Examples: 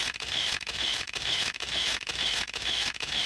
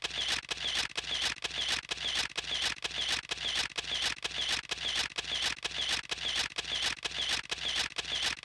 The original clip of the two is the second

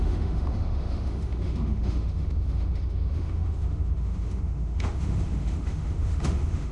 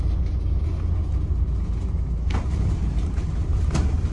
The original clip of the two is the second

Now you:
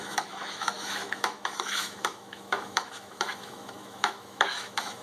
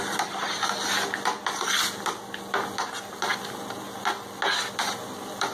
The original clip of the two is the second